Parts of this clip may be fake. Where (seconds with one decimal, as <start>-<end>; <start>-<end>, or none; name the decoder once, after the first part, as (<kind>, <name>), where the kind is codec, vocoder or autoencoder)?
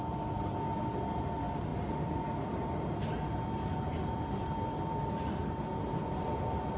1.7-3.0 (vocoder, BigVGAN v2)